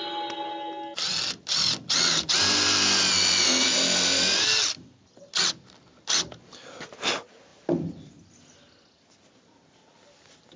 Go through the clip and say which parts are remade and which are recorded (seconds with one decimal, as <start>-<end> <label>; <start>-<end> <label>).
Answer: 0.0-7.5 recorded; 7.5-8.7 remade; 8.7-10.6 recorded